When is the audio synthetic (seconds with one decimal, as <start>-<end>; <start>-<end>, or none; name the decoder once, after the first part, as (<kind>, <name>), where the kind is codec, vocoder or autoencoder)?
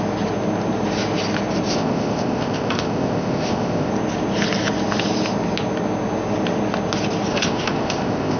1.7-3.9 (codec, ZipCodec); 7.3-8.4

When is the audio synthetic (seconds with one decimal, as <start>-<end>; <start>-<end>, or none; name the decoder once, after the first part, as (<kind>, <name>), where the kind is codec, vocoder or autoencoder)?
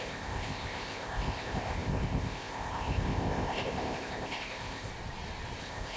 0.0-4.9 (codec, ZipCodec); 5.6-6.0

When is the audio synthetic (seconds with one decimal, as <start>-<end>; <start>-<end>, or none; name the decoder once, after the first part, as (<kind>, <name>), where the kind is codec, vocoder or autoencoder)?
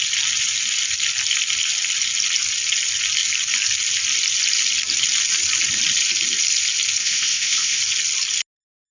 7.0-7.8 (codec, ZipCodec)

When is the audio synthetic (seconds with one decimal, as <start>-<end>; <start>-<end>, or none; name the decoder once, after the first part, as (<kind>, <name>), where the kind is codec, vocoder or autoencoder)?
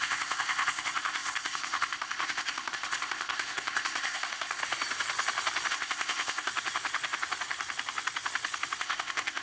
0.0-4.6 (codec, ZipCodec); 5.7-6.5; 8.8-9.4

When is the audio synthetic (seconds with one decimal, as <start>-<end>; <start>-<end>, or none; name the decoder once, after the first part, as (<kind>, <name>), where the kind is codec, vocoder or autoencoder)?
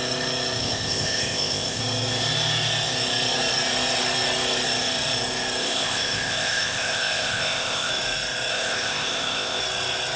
0.6-1.8 (codec, ZipCodec); 5.6-7.9; 8.5-9.6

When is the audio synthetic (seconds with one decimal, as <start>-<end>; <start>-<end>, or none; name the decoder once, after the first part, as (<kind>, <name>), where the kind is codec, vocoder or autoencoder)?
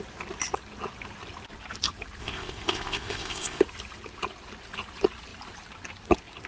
2.2-3.6 (codec, ZipCodec)